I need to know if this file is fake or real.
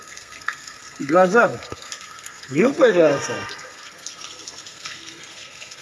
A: fake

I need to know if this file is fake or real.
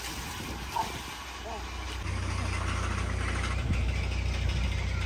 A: real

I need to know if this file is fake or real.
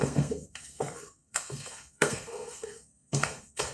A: fake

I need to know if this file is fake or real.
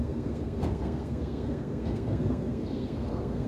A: fake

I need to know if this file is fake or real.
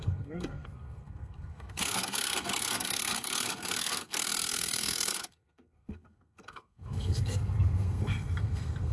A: fake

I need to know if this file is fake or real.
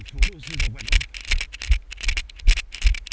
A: real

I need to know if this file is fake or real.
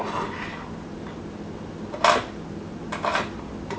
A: real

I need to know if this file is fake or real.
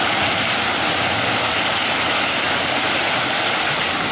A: real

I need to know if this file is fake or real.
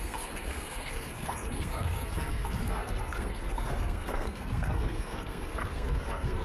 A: fake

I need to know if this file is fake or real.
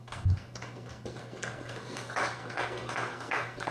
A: fake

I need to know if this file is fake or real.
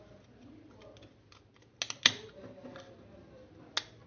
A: real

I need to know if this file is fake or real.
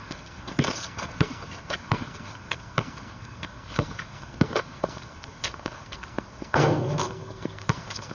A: fake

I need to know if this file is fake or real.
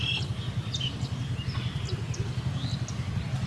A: real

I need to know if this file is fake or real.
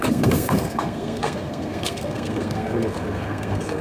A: fake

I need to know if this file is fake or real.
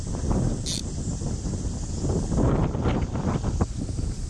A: real